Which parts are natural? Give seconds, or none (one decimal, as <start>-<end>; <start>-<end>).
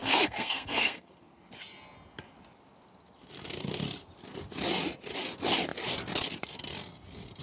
1.2-7.4